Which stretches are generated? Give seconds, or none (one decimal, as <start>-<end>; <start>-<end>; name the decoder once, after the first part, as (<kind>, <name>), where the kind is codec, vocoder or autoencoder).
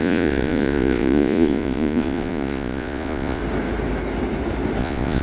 0.0-3.4 (vocoder, Vocos); 4.8-5.2